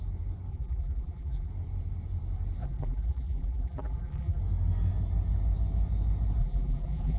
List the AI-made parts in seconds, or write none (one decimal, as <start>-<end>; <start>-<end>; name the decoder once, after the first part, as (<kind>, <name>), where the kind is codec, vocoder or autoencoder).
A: 0.5-1.5 (vocoder, BigVGAN v2); 2.6-4.4; 6.4-7.2